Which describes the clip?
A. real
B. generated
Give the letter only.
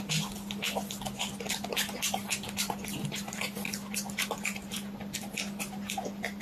A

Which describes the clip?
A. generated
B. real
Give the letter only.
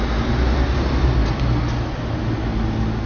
B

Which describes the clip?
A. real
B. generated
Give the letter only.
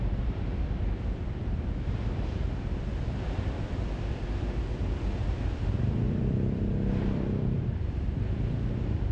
B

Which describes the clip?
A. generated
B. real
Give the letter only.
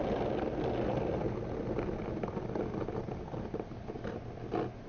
B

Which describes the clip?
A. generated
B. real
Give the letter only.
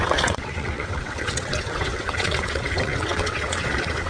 A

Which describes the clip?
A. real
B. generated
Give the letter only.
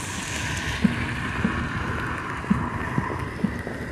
A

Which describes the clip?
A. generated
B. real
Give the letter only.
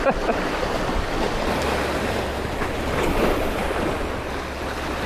B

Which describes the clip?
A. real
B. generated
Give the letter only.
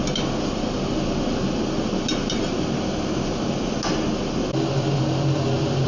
A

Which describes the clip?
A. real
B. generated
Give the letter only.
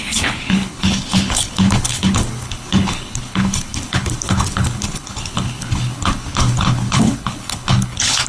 B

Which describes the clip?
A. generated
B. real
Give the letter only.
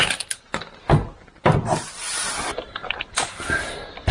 B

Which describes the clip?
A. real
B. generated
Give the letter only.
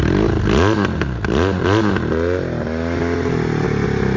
A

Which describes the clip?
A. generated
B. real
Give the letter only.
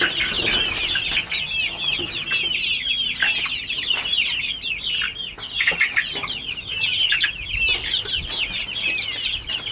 B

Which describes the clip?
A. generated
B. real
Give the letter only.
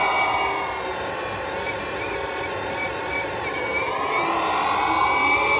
B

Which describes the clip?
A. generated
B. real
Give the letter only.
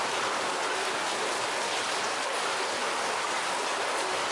B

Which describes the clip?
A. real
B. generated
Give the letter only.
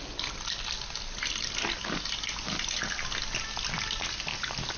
A